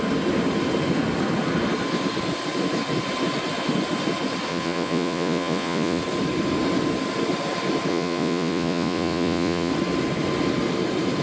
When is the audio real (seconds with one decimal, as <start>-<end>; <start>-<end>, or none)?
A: 0.0-4.5; 6.0-7.9; 9.7-11.2